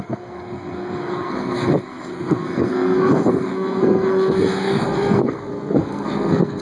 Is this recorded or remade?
remade